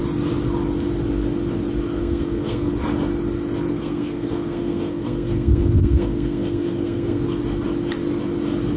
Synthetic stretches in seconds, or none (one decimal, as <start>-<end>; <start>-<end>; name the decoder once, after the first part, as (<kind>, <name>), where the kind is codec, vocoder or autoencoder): 2.0-2.7 (codec, SNAC); 3.7-7.4